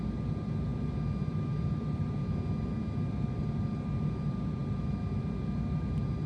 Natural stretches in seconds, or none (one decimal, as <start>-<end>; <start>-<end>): 0.0-6.3